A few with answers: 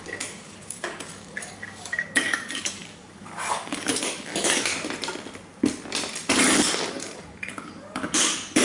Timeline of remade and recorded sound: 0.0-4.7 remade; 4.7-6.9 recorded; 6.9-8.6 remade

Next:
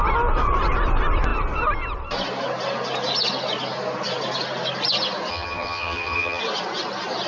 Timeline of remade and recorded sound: 0.0-5.3 recorded; 5.3-6.4 remade; 6.4-7.3 recorded